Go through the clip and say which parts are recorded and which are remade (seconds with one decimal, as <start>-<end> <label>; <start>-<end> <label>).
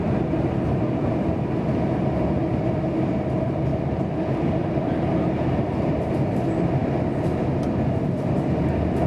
0.0-9.1 recorded